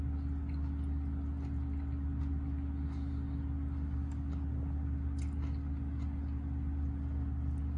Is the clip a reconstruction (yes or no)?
no